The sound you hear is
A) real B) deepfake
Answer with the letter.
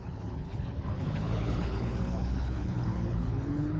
B